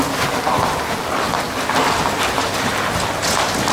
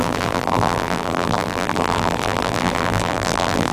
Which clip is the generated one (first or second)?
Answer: second